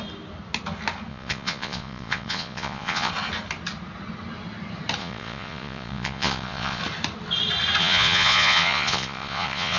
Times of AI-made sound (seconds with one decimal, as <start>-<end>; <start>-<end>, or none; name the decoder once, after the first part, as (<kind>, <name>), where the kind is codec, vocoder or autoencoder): 1.1-3.1 (vocoder, Vocos); 5.0-6.8; 7.8-9.8